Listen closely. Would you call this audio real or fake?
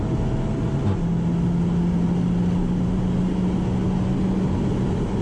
real